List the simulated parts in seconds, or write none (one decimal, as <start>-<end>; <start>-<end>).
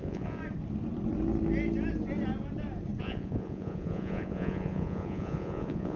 0.0-0.4; 3.0-6.0